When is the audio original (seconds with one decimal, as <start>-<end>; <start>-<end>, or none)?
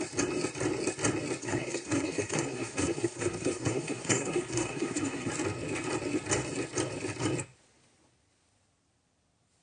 0.0-1.4; 5.3-9.6